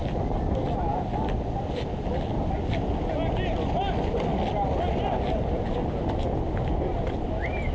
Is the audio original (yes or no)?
yes